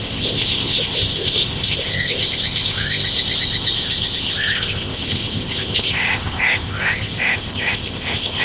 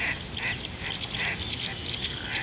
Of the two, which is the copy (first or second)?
first